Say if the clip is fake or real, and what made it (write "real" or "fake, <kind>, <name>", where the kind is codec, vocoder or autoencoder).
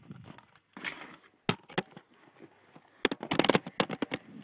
real